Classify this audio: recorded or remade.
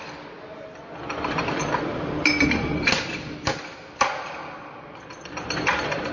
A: recorded